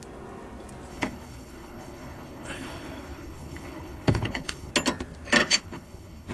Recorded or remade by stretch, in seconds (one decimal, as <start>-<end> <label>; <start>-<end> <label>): 0.0-0.9 recorded; 0.9-4.7 remade; 4.7-5.4 recorded; 5.4-6.3 remade